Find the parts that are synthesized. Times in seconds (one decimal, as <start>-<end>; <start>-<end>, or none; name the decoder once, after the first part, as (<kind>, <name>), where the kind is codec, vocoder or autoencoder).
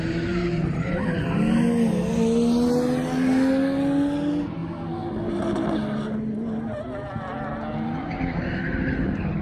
none